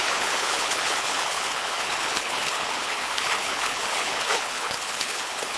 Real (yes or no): no